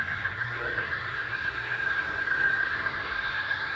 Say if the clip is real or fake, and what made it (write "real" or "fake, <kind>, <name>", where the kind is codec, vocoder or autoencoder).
fake, codec, SNAC